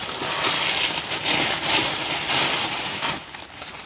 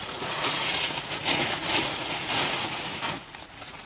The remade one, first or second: second